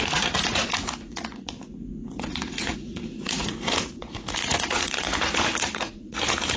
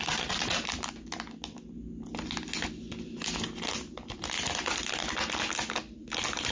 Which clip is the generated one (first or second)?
first